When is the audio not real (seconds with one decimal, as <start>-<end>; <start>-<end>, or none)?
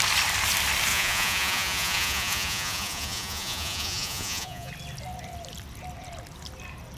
0.9-4.7